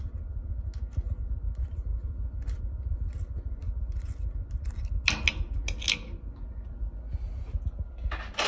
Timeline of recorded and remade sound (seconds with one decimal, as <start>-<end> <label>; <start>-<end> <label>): 0.0-8.5 recorded